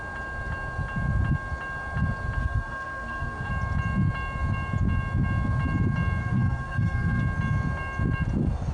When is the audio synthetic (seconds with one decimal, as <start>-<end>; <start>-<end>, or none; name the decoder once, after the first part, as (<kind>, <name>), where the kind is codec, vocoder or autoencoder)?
2.4-3.5 (codec, SNAC); 6.2-7.2